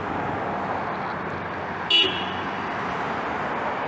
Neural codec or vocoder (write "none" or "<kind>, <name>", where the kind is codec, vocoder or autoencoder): none